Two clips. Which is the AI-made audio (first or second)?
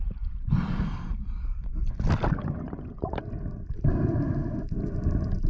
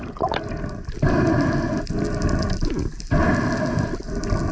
first